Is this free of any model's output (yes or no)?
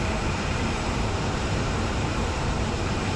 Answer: no